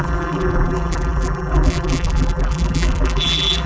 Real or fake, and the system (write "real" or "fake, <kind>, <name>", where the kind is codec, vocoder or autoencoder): fake, vocoder, BigVGAN v2